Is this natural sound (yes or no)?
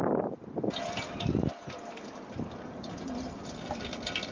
yes